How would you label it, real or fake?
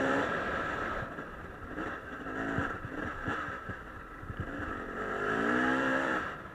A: fake